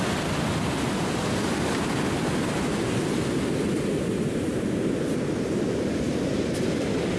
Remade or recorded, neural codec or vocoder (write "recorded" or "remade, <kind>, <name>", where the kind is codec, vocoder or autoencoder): recorded